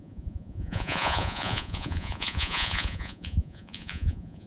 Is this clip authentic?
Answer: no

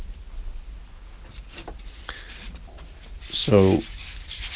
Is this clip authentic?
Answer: yes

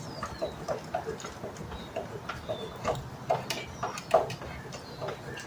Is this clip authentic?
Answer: yes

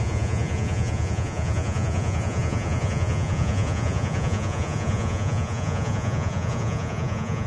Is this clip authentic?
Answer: no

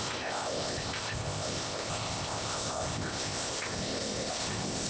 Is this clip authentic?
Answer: no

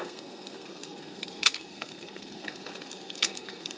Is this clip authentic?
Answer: no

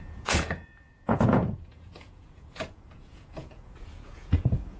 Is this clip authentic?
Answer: no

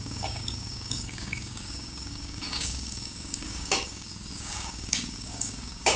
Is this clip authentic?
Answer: no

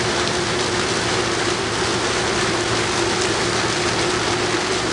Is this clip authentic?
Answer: yes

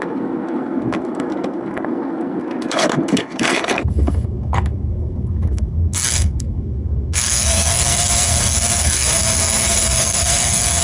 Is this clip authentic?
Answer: no